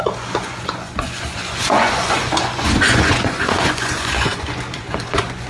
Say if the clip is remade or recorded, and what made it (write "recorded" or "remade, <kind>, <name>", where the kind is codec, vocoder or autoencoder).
remade, vocoder, Vocos